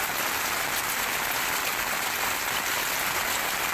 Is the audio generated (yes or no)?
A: no